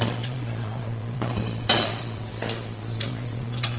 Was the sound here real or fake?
fake